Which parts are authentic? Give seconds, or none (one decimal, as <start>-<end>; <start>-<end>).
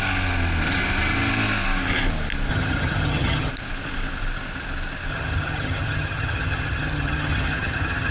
0.0-2.5; 3.5-5.1